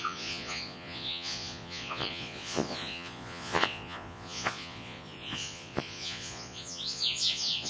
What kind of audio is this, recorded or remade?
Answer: remade